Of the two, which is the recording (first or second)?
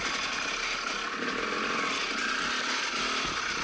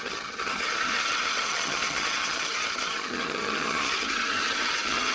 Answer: first